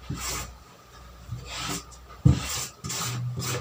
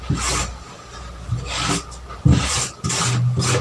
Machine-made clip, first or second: second